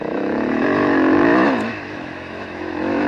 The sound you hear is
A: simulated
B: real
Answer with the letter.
A